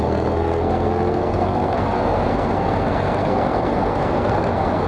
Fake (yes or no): yes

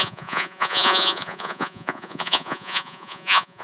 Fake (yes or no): yes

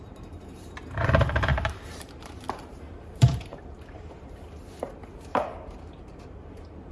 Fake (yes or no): yes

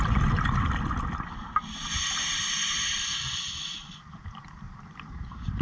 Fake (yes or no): no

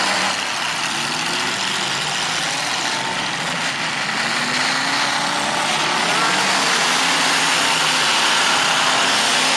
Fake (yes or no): no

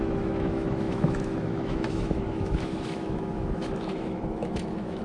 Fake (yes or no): yes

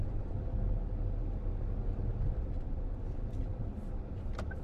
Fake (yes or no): no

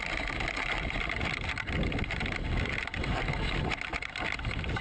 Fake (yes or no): no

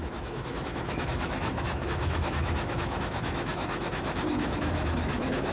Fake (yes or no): yes